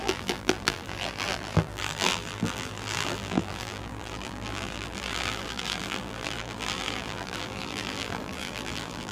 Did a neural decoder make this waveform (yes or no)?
yes